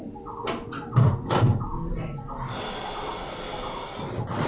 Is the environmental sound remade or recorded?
recorded